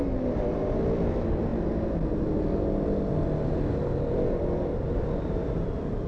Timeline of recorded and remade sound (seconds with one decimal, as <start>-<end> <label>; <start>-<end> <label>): 0.0-6.1 recorded

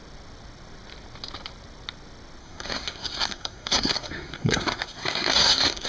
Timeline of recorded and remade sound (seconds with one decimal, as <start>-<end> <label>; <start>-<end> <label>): 0.0-2.4 recorded; 2.4-5.9 remade